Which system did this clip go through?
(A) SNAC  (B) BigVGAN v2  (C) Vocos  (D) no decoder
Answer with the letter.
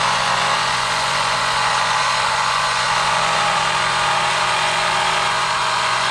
C